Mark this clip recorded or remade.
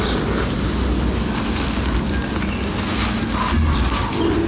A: recorded